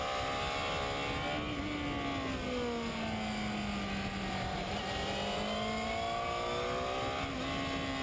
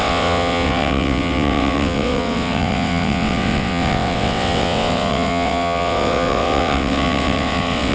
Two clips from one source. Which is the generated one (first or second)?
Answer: second